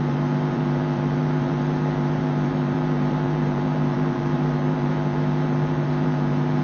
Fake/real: fake